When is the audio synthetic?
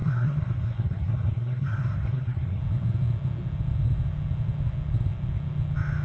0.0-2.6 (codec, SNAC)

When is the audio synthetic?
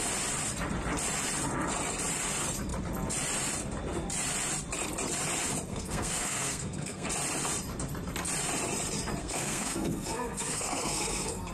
5.7-7.1 (codec, SNAC); 9.2-11.5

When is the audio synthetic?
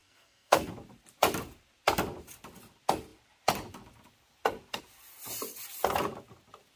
0.0-0.7 (codec, SNAC)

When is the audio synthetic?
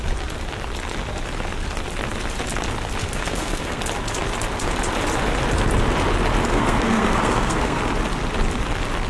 3.0-3.8 (codec, SNAC); 6.5-7.8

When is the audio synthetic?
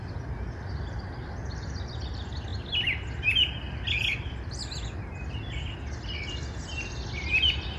none